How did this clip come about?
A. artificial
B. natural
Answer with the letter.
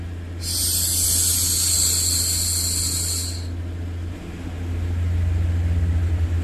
B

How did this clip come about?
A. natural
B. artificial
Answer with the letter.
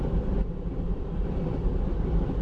B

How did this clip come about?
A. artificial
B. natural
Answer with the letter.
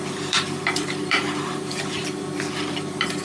A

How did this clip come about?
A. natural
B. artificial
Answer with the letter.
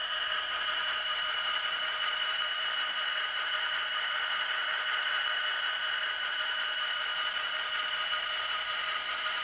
B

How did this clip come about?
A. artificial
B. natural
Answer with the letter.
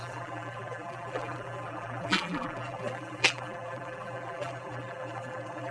A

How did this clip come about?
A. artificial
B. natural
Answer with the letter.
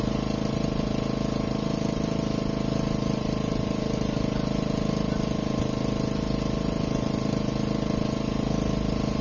B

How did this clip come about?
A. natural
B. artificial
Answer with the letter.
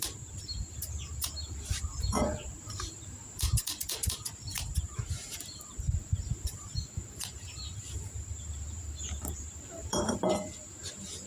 B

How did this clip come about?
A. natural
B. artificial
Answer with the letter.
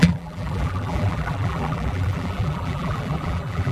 B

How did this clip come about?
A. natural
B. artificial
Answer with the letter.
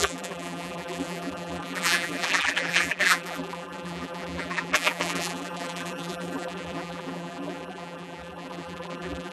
B